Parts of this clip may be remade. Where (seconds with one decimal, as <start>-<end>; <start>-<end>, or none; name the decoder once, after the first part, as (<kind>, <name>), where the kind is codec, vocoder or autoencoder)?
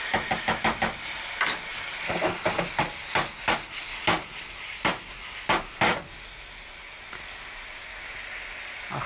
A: none